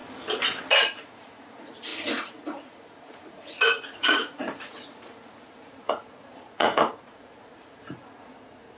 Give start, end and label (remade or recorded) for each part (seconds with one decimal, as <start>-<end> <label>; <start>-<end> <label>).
0.0-0.7 recorded; 0.7-8.8 remade